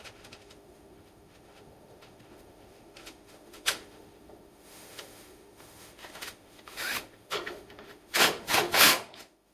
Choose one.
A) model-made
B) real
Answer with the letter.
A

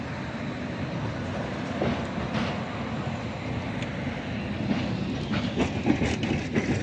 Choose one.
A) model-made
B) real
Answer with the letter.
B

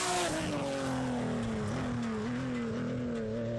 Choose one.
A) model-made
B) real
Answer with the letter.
B